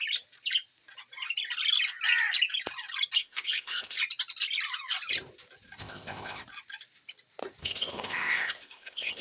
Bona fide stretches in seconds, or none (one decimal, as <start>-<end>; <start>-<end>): 0.0-3.2; 4.0-5.8; 6.4-7.6